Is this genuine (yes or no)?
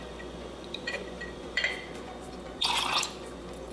no